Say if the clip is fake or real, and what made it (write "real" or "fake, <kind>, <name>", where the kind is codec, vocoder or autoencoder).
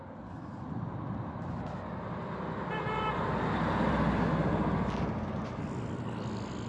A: real